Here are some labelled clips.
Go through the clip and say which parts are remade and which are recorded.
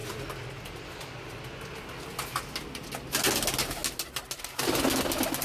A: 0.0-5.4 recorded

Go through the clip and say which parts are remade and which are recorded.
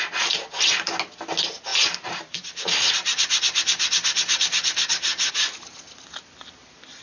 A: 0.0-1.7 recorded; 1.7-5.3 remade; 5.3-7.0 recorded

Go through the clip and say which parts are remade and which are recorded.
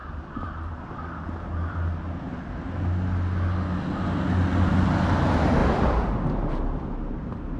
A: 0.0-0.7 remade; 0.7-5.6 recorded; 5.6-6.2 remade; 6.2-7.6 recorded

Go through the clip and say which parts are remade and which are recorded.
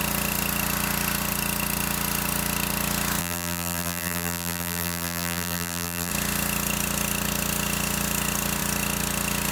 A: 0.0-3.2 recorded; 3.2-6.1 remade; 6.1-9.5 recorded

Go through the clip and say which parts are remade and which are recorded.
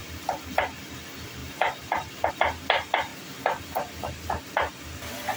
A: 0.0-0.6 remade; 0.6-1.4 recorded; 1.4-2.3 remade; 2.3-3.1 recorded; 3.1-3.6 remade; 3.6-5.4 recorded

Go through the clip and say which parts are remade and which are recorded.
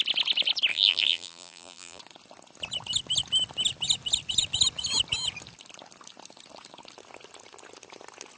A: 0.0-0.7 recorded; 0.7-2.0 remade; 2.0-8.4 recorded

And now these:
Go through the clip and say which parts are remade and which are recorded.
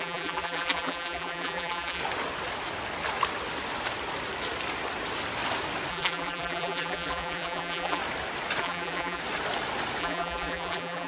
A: 0.0-2.0 remade; 2.0-5.9 recorded; 5.9-8.0 remade; 8.0-8.6 recorded; 8.6-9.2 remade; 9.2-10.0 recorded; 10.0-11.1 remade